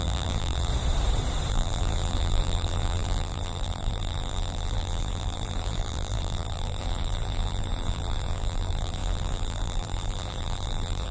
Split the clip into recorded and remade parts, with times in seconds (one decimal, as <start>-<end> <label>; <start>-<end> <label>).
0.0-0.7 remade; 0.7-1.5 recorded; 1.5-11.1 remade